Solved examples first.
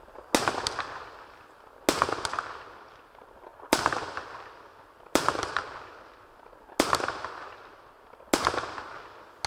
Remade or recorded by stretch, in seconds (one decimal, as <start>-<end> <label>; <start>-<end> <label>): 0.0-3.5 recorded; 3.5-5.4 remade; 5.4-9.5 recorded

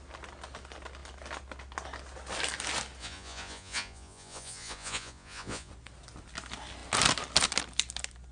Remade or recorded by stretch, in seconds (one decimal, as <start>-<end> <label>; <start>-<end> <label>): 0.0-3.0 recorded; 3.0-5.7 remade; 5.7-8.3 recorded

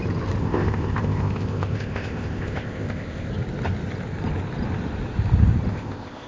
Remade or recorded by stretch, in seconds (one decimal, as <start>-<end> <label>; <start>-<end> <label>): 0.0-0.4 recorded; 0.4-3.3 remade; 3.3-5.7 recorded; 5.7-6.3 remade

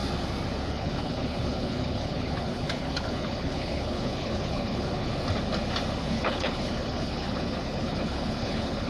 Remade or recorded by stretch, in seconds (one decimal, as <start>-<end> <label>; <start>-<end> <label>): 0.0-0.7 recorded; 0.7-5.1 remade; 5.1-6.0 recorded; 6.0-8.9 remade

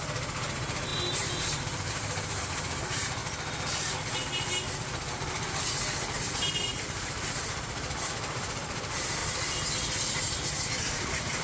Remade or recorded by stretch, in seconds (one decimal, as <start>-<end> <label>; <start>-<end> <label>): 0.0-0.9 remade; 0.9-1.9 recorded; 1.9-3.2 remade; 3.2-6.2 recorded; 6.2-9.2 remade; 9.2-10.2 recorded; 10.2-11.4 remade